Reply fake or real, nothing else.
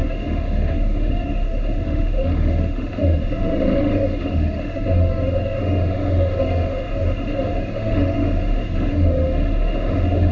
fake